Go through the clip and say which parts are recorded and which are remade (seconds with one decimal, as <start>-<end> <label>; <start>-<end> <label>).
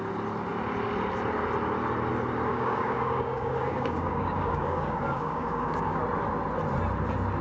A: 0.0-2.5 recorded; 2.5-6.0 remade; 6.0-7.4 recorded